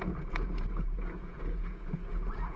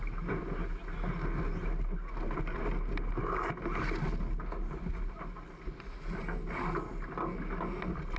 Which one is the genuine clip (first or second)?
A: second